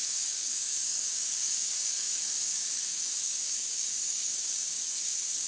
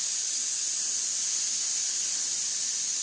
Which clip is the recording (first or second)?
second